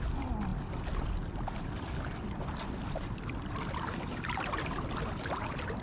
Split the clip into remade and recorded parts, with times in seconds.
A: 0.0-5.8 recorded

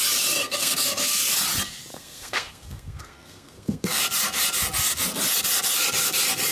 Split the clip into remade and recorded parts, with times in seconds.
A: 0.0-0.4 recorded; 0.4-1.2 remade; 1.2-1.9 recorded; 1.9-4.0 remade; 4.0-6.5 recorded

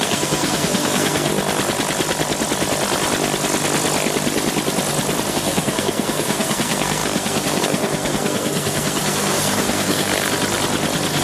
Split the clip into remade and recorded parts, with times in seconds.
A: 0.0-1.3 remade; 1.3-5.3 recorded; 5.3-10.1 remade; 10.1-11.2 recorded

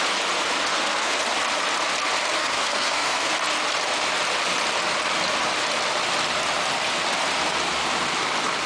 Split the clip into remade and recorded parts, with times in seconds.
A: 0.0-0.7 recorded; 0.7-1.2 remade; 1.2-2.4 recorded; 2.4-3.3 remade; 3.3-8.7 recorded

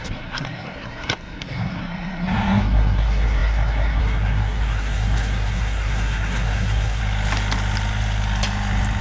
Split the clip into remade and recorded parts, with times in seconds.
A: 0.0-7.0 remade; 7.0-9.0 recorded

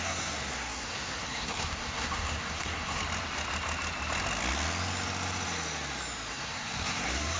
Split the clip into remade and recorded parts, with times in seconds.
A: 0.0-3.0 remade; 3.0-6.3 recorded; 6.3-7.4 remade

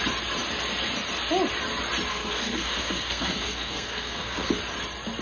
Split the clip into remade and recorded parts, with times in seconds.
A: 0.0-2.1 recorded; 2.1-4.5 remade; 4.5-5.2 recorded